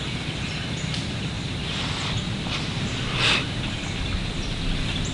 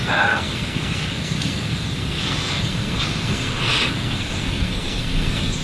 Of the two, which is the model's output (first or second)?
second